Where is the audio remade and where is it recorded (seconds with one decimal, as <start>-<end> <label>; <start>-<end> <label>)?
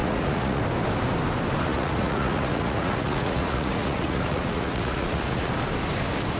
0.0-0.6 remade; 0.6-1.7 recorded; 1.7-5.5 remade; 5.5-6.4 recorded